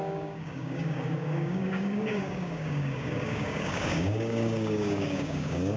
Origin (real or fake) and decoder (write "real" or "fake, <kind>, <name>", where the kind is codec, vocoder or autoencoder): fake, codec, DAC